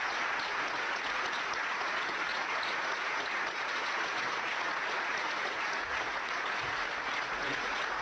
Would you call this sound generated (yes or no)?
yes